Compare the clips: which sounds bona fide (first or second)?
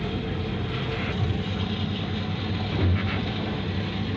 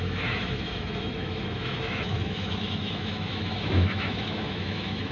first